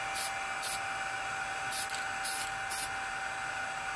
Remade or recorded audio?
recorded